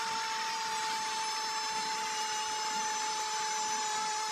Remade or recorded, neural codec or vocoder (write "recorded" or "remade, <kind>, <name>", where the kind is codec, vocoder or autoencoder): recorded